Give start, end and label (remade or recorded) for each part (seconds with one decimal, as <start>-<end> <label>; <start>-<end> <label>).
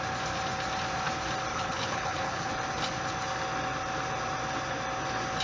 0.0-1.5 recorded; 1.5-2.5 remade; 2.5-5.4 recorded